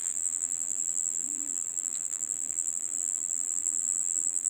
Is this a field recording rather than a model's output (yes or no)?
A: no